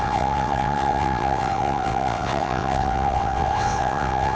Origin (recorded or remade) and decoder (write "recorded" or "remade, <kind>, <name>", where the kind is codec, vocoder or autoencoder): remade, vocoder, WaveNeXt